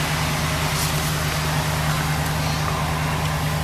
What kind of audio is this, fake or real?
real